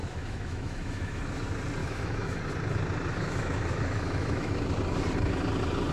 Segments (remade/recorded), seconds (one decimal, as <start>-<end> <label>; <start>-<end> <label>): 0.0-1.2 remade; 1.2-1.8 recorded; 1.8-2.4 remade; 2.4-3.1 recorded; 3.1-4.5 remade; 4.5-5.9 recorded